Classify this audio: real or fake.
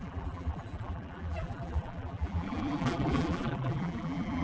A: fake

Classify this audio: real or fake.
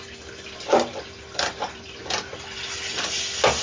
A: fake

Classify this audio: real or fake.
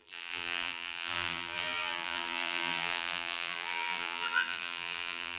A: fake